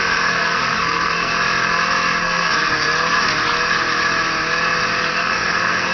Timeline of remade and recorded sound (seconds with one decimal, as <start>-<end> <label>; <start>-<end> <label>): 0.0-1.3 remade; 1.3-2.2 recorded; 2.2-2.7 remade; 2.7-5.1 recorded; 5.1-5.9 remade